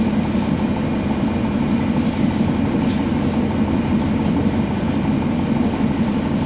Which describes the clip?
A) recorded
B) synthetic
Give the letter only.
A